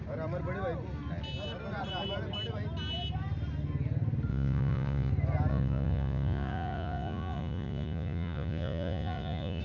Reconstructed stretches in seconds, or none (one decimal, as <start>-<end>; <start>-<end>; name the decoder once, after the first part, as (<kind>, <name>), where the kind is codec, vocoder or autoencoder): 4.3-5.1 (vocoder, Vocos); 5.5-9.6